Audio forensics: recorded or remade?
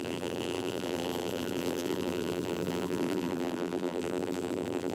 remade